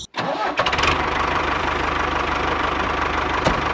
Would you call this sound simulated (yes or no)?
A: yes